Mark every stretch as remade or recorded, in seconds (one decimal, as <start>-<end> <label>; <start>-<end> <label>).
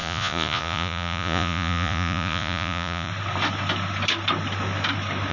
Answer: 0.0-3.1 remade; 3.1-5.3 recorded